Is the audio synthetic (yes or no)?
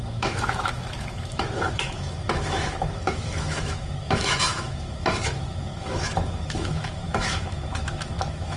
yes